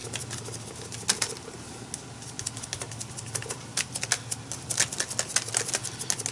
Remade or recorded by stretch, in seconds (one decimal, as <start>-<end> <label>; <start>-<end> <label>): 0.0-6.3 recorded